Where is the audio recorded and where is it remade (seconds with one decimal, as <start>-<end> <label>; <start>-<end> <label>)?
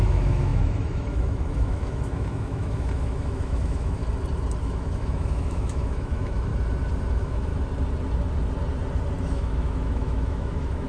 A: 0.0-4.0 remade; 4.0-4.6 recorded; 4.6-6.5 remade; 6.5-7.1 recorded; 7.1-7.5 remade; 7.5-9.2 recorded; 9.2-10.9 remade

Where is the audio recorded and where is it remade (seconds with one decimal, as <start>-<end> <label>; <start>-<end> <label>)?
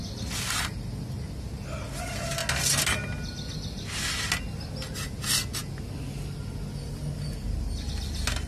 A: 0.0-8.5 recorded